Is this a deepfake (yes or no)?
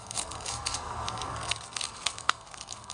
yes